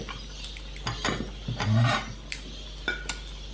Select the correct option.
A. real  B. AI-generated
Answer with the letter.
A